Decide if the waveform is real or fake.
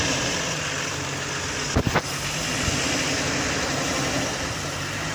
real